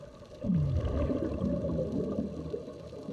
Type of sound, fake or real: real